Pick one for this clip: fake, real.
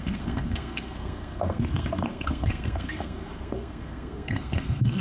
fake